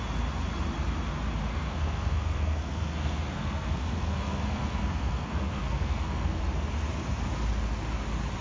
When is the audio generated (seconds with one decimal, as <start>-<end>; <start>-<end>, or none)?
1.5-6.4